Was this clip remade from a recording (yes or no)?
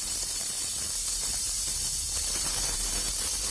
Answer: yes